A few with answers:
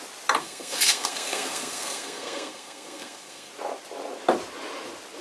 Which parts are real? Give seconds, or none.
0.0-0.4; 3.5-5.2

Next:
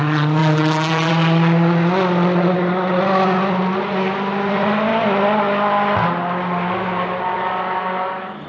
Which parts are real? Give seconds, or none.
0.0-0.4; 1.1-8.5